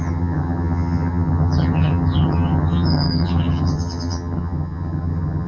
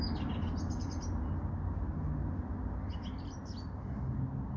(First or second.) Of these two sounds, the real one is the second